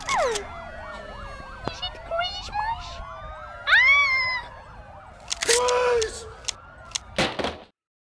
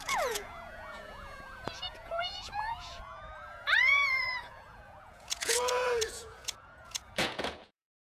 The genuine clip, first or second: first